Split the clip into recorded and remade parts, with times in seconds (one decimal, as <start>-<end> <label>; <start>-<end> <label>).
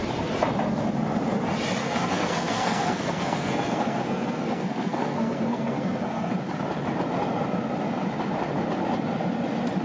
0.0-1.8 recorded; 1.8-6.3 remade; 6.3-9.8 recorded